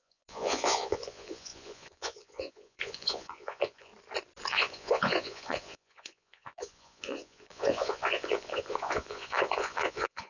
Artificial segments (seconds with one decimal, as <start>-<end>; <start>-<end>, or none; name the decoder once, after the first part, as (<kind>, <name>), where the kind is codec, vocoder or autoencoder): 0.0-3.9 (vocoder, Vocos); 4.5-10.3